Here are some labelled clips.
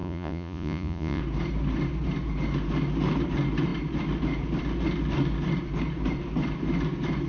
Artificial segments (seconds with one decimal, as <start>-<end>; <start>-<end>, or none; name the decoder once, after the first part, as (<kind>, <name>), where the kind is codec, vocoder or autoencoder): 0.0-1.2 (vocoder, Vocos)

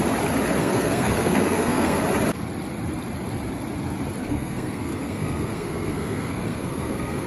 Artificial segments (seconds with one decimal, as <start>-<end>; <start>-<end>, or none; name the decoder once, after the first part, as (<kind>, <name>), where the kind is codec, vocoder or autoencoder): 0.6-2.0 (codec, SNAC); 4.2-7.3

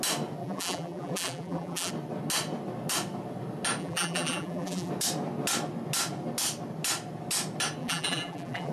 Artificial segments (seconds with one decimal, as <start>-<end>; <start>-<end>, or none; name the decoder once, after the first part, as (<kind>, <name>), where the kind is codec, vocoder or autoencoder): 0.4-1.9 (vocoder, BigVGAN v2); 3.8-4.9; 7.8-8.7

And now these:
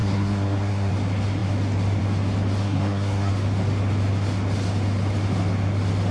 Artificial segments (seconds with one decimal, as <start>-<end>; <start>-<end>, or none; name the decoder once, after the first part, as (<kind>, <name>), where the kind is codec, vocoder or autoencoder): 0.0-0.9 (codec, SNAC); 2.6-3.3

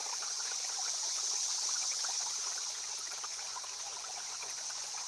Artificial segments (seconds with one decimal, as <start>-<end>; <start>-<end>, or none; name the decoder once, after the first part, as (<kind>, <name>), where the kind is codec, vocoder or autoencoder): 0.0-5.1 (vocoder, Vocos)

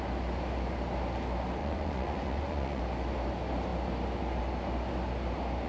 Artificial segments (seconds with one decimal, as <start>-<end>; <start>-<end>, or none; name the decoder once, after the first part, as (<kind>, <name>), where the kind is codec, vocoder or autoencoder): 1.6-2.8 (vocoder, Vocos)